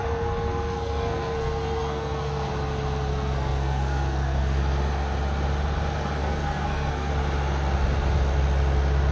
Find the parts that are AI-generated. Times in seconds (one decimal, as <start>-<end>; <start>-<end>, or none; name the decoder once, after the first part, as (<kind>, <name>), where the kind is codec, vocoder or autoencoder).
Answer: 0.0-2.5 (codec, SNAC); 3.1-4.6; 6.2-7.1